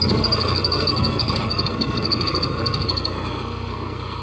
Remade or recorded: remade